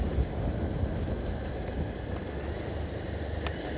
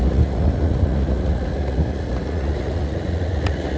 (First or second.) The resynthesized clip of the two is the second